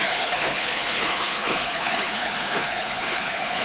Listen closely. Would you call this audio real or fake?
fake